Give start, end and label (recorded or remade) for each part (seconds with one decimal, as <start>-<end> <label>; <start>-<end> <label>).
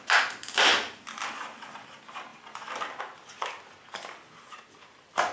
0.0-5.3 recorded